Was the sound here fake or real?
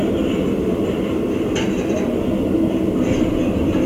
real